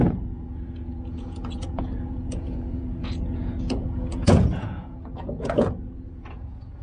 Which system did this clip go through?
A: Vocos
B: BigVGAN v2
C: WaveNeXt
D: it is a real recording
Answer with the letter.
A